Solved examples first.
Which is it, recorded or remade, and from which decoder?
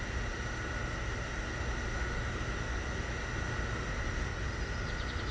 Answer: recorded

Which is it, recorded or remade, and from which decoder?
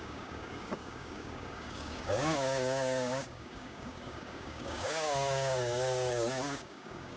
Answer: remade, codec, DAC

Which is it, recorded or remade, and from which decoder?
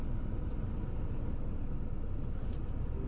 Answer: recorded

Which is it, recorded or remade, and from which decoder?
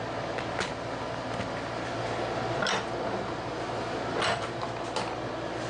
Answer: recorded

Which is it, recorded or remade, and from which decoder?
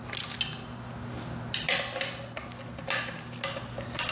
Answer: recorded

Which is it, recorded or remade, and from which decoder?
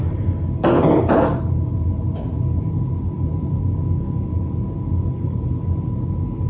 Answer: recorded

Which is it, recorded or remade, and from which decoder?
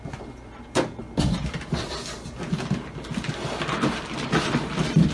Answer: recorded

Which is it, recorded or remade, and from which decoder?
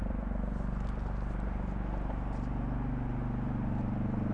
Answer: recorded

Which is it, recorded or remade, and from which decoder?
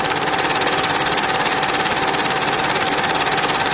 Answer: remade, vocoder, BigVGAN v2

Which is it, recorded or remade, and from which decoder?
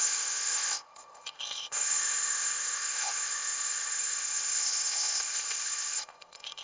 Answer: remade, codec, ZipCodec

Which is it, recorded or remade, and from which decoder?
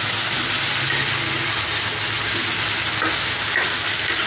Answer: recorded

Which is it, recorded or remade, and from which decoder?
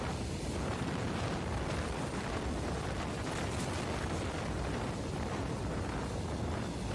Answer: remade, vocoder, BigVGAN v2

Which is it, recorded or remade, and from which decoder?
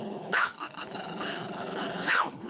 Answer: remade, codec, HILCodec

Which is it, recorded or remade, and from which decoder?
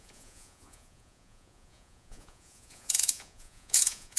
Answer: remade, vocoder, Vocos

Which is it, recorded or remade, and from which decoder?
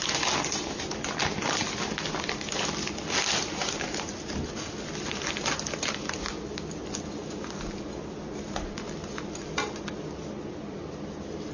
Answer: recorded